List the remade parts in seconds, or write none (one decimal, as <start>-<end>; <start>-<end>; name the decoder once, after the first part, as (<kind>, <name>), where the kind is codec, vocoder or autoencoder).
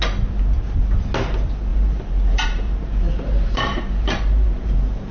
1.7-5.1 (vocoder, BigVGAN v2)